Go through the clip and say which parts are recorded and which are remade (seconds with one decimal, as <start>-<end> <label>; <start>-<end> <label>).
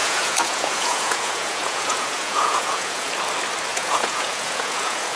0.0-3.1 remade; 3.1-3.7 recorded; 3.7-5.2 remade